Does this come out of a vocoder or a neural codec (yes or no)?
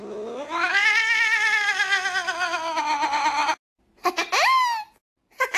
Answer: no